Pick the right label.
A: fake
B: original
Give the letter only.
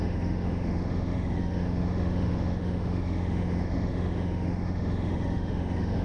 A